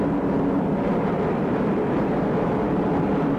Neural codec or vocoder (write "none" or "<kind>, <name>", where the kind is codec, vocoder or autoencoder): vocoder, BigVGAN v2